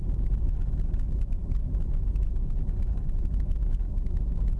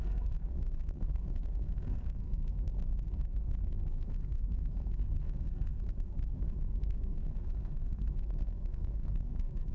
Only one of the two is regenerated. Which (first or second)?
second